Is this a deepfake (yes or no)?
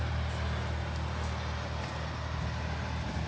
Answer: no